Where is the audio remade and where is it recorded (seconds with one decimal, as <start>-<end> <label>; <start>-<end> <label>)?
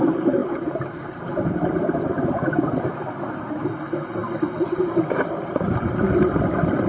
0.0-6.9 recorded